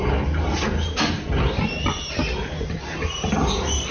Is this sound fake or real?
real